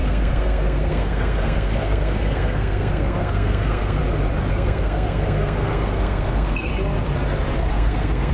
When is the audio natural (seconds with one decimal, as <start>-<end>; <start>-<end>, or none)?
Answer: 4.0-4.5; 6.7-7.7